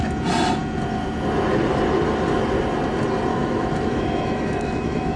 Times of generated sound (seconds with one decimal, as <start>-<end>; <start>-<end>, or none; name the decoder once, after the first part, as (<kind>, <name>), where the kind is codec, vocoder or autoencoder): 3.3-5.2 (autoencoder, DAC-VAE)